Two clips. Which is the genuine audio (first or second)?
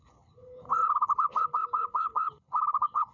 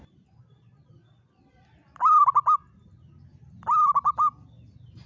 second